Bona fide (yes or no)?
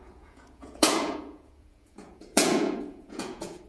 no